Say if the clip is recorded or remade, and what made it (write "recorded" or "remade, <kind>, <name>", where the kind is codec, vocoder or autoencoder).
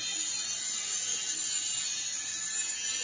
recorded